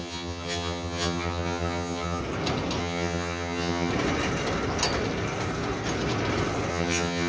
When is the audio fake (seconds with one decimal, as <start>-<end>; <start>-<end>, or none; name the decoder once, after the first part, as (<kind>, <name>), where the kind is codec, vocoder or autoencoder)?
0.0-2.2 (vocoder, HiFi-GAN); 2.8-3.9; 6.7-7.3